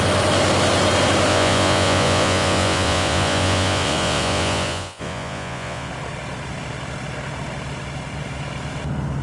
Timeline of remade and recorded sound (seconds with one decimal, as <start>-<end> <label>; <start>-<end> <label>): 0.0-1.3 recorded; 1.3-5.9 remade; 5.9-9.2 recorded